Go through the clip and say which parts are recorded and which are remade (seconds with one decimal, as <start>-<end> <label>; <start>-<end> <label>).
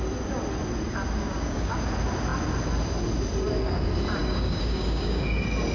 0.0-1.2 recorded; 1.2-1.7 remade; 1.7-4.2 recorded; 4.2-5.2 remade; 5.2-5.7 recorded